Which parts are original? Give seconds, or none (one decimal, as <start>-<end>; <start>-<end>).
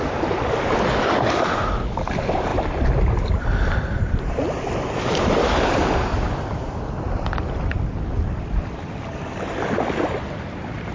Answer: 0.0-10.9